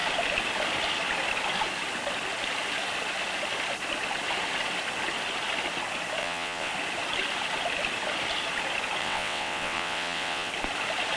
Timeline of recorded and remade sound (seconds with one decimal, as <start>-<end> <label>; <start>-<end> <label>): 0.0-6.2 recorded; 6.2-6.7 remade; 6.7-9.0 recorded; 9.0-10.5 remade; 10.5-11.2 recorded